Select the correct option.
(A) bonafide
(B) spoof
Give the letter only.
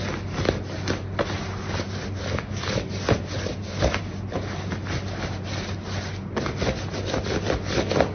A